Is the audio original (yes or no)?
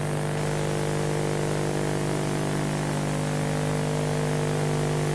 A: yes